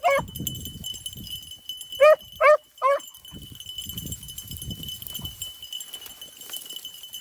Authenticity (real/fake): real